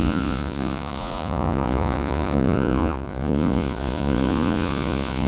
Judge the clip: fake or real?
fake